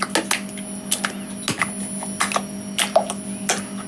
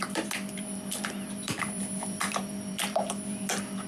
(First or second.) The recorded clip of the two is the first